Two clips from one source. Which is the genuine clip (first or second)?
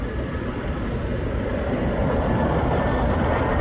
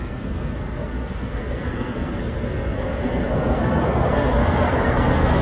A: first